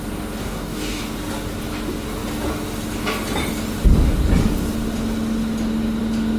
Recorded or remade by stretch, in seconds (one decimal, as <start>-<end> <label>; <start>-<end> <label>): 0.0-0.4 recorded; 0.4-1.0 remade; 1.0-6.4 recorded